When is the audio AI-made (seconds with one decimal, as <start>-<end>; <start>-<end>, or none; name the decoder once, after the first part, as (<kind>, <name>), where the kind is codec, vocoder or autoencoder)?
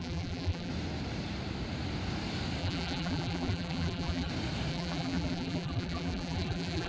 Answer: 0.0-0.7 (vocoder, BigVGAN v2); 2.6-4.3; 4.7-6.9